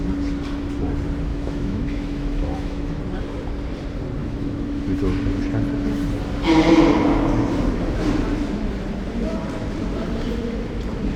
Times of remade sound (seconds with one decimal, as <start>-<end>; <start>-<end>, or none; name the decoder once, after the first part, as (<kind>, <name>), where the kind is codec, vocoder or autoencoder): 1.3-3.0 (autoencoder, DAC-VAE); 4.2-4.8